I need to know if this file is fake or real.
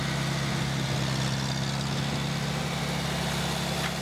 real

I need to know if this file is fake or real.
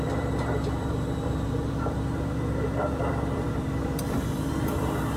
fake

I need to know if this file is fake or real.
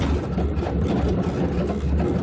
real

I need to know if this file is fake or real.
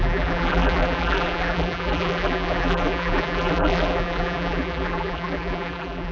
fake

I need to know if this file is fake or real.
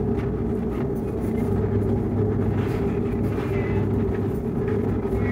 real